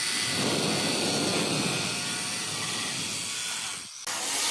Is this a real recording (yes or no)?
yes